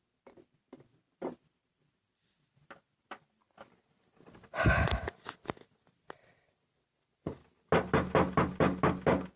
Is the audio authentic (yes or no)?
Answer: yes